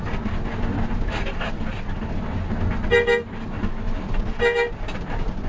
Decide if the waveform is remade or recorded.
recorded